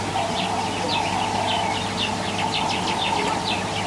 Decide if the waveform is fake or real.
fake